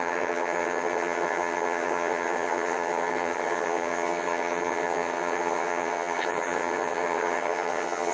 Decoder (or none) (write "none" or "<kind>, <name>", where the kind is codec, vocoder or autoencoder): vocoder, HiFi-GAN